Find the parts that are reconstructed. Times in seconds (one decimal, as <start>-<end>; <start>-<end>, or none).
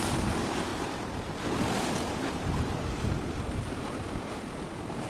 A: 0.0-5.1